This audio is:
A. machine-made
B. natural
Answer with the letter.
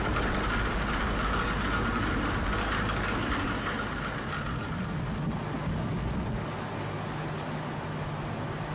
B